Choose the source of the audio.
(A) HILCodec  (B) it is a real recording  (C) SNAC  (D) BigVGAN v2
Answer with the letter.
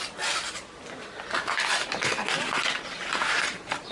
B